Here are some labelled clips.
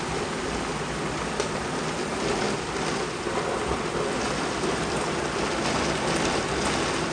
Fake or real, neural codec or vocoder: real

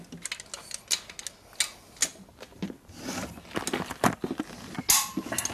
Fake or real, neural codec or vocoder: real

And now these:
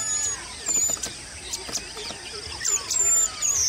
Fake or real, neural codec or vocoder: real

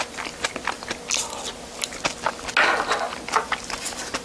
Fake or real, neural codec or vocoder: real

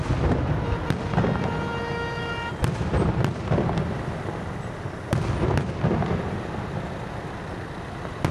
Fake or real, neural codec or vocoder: real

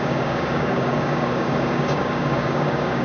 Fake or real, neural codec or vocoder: fake, codec, DAC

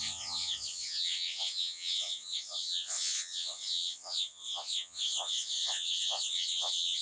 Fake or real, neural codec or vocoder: fake, vocoder, WaveNeXt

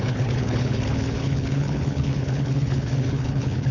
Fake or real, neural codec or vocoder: fake, codec, HILCodec